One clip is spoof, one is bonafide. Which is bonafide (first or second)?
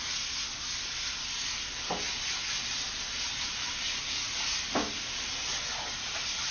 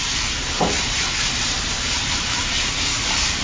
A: first